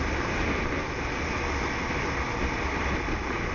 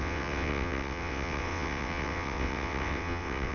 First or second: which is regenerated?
second